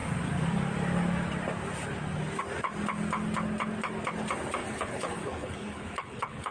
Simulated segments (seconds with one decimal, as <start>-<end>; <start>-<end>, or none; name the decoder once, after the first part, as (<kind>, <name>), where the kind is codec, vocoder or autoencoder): 4.6-6.5 (codec, HILCodec)